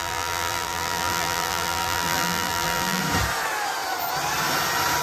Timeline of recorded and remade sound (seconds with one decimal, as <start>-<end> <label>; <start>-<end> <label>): 0.0-3.0 remade; 3.0-5.0 recorded